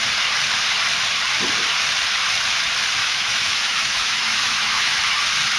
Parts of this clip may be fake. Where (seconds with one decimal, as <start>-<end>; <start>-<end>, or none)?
3.0-5.0